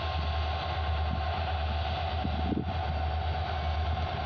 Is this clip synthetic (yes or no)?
no